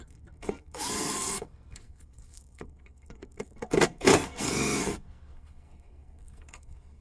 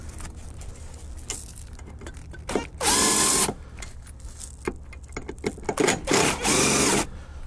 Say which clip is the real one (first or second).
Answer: second